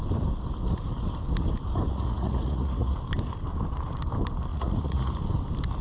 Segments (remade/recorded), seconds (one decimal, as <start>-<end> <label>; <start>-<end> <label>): 0.0-1.9 recorded; 1.9-3.0 remade; 3.0-4.5 recorded; 4.5-5.1 remade; 5.1-5.8 recorded